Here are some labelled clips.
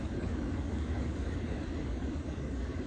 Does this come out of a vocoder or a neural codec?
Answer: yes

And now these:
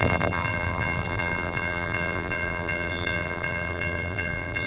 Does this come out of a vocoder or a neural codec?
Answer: yes